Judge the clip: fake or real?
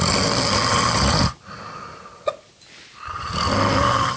real